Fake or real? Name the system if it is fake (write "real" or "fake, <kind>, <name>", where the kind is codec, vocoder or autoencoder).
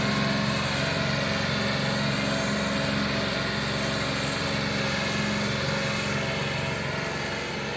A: real